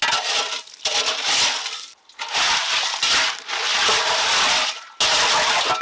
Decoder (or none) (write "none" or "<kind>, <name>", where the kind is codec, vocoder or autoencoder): none